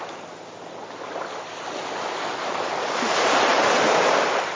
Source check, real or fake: real